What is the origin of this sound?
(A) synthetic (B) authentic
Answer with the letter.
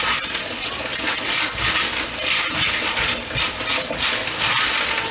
B